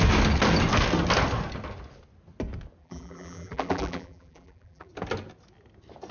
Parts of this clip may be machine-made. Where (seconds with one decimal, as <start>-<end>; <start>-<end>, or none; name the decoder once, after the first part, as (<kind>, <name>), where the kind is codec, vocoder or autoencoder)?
2.8-4.9 (vocoder, BigVGAN v2)